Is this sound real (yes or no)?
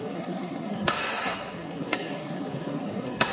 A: no